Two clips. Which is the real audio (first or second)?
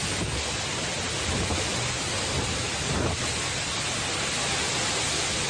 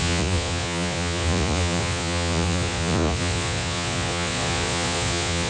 first